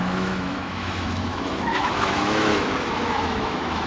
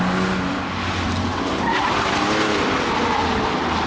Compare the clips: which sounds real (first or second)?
second